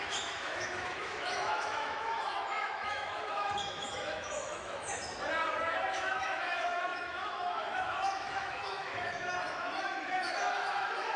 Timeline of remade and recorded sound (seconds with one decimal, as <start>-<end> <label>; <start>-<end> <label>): 0.0-5.0 remade; 5.0-5.9 recorded; 5.9-11.2 remade